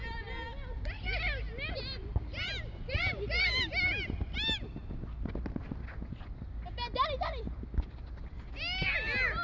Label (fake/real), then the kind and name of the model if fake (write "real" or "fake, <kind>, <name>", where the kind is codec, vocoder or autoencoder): real